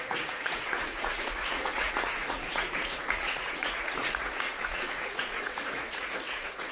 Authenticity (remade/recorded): remade